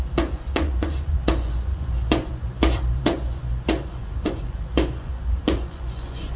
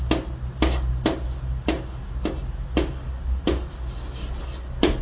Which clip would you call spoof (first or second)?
first